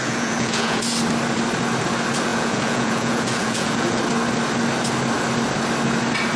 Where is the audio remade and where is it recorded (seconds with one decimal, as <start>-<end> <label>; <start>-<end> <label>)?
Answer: 0.0-0.8 remade; 0.8-2.3 recorded; 2.3-4.0 remade; 4.0-6.4 recorded

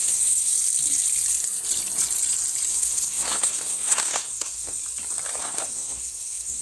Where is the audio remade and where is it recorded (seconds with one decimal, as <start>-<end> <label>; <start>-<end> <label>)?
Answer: 0.0-0.5 remade; 0.5-2.7 recorded; 2.7-4.8 remade; 4.8-5.4 recorded; 5.4-6.6 remade

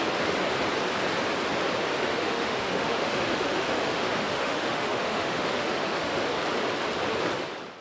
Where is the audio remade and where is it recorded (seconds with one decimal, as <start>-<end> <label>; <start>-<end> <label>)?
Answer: 0.0-2.0 recorded; 2.0-6.2 remade; 6.2-7.8 recorded